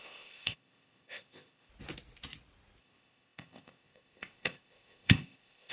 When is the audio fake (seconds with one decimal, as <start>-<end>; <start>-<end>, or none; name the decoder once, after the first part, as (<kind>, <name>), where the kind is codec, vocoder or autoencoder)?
0.0-1.7 (codec, ZipCodec); 2.8-5.7